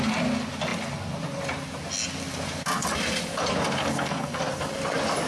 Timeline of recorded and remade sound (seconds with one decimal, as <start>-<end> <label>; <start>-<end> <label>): 0.0-3.8 recorded; 3.8-4.4 remade; 4.4-5.3 recorded